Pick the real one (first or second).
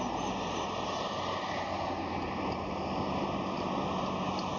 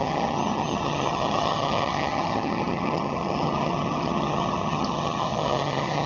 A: first